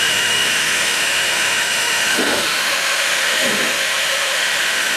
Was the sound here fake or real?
fake